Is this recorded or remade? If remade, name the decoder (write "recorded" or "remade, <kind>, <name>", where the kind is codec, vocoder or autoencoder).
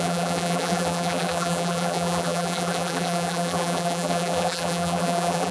remade, vocoder, BigVGAN v2